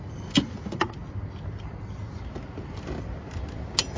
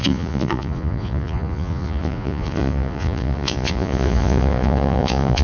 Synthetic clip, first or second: second